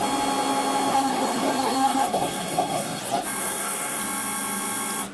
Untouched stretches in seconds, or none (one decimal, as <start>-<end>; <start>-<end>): 0.0-0.9; 3.0-3.4; 4.0-5.1